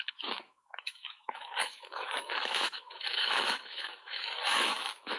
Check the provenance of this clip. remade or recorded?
remade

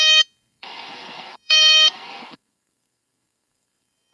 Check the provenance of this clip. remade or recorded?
remade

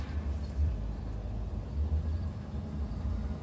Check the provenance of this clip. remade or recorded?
recorded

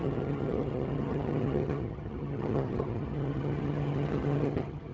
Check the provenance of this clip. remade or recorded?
remade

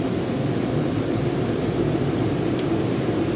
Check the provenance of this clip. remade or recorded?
remade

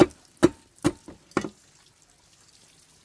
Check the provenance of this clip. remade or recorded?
recorded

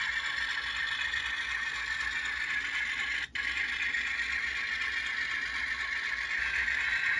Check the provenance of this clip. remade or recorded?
recorded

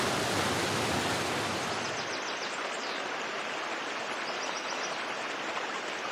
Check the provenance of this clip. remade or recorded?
recorded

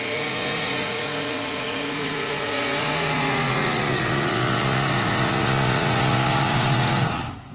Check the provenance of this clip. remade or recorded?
remade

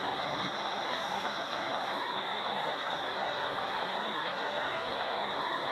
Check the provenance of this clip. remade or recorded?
remade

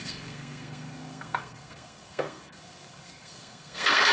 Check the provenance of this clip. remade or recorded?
remade